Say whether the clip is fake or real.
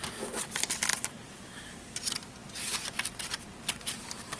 real